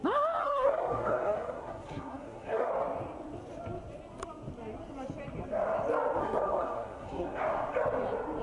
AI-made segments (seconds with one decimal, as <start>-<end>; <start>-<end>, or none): 0.4-2.7; 6.2-7.4